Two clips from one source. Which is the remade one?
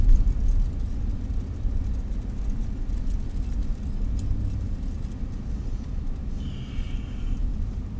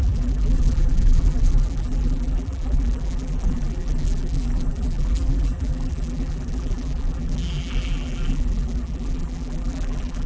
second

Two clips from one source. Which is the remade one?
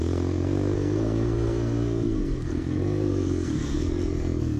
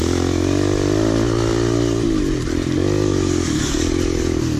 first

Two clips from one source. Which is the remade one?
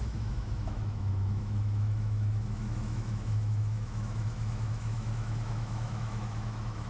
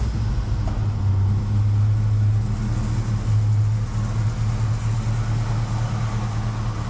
first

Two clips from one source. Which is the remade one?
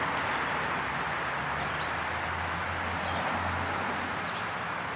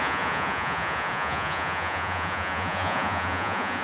second